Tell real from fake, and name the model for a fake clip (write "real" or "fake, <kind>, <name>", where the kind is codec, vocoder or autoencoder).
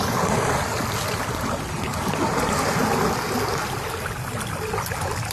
real